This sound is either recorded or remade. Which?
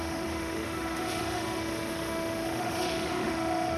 remade